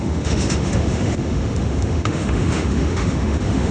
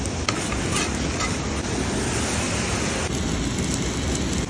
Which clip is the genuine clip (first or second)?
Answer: second